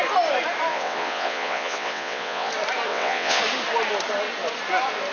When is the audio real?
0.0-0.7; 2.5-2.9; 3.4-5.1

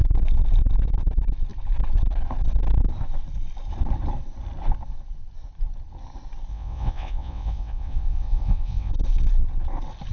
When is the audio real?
0.0-6.5; 8.9-10.1

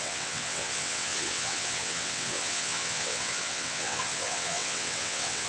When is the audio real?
none

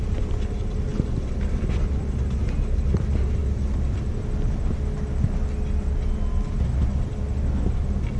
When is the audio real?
0.0-8.2